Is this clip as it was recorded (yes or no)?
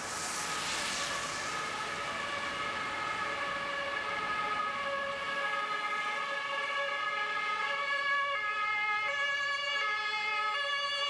yes